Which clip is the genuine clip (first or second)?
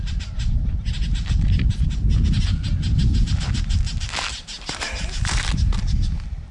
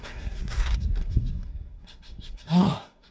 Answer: first